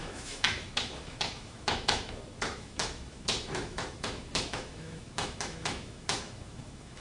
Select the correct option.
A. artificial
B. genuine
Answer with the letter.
A